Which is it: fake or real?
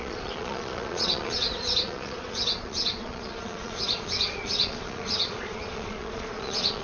fake